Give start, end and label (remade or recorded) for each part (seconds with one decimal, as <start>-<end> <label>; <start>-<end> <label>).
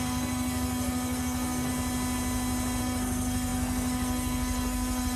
0.0-1.7 remade; 1.7-2.8 recorded; 2.8-5.2 remade